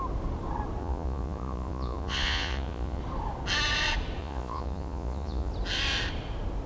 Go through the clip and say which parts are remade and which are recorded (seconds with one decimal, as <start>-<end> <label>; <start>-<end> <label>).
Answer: 0.0-0.8 recorded; 0.8-3.0 remade; 3.0-4.2 recorded; 4.2-5.5 remade; 5.5-6.7 recorded